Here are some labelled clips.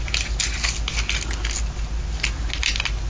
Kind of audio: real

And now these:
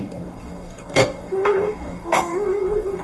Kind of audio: fake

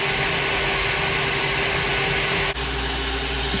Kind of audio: real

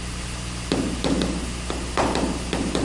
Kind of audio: real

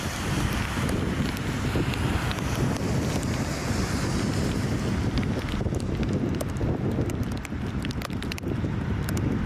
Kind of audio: real